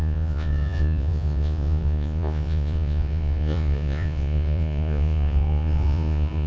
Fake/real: fake